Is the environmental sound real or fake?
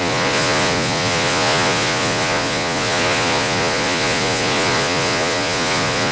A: fake